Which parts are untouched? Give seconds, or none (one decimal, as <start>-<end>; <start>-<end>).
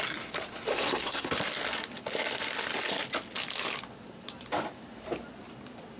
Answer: 0.0-0.7; 1.4-6.0